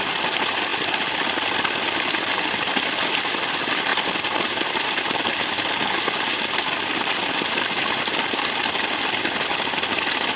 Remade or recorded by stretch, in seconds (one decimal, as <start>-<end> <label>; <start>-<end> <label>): 0.0-10.4 recorded

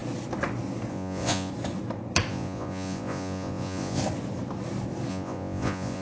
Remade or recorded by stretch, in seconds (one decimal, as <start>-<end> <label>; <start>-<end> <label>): 0.0-0.9 recorded; 0.9-1.5 remade; 1.5-2.3 recorded; 2.3-4.0 remade; 4.0-5.1 recorded; 5.1-6.0 remade